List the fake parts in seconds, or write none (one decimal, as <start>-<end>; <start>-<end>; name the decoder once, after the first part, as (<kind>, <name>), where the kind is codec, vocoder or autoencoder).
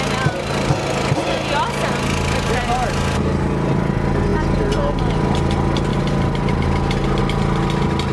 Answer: none